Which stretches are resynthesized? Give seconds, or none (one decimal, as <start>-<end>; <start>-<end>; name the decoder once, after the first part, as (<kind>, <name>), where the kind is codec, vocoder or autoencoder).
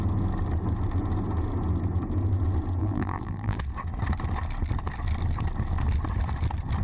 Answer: 2.8-3.6 (vocoder, BigVGAN v2)